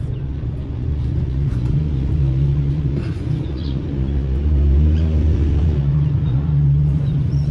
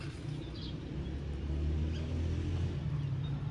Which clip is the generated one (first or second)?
first